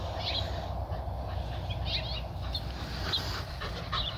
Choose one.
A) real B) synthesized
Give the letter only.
A